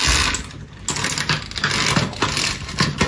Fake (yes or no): no